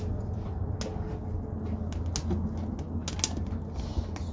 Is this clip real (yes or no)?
yes